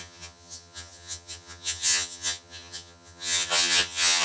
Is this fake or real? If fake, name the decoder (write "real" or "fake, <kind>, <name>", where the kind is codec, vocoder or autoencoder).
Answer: fake, vocoder, HiFi-GAN